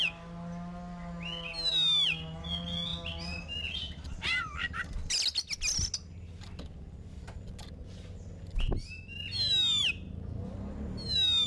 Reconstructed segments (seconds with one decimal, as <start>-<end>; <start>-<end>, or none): none